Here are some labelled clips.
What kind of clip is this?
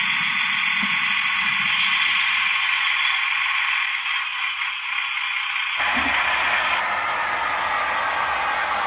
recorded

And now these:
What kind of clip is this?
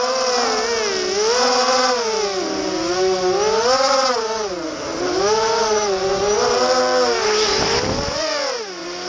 recorded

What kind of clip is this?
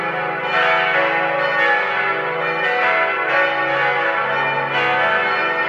recorded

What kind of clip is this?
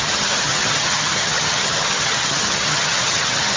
remade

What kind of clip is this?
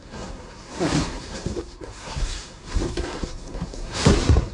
remade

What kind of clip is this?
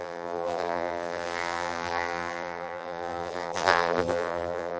remade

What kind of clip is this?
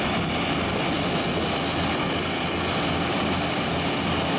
recorded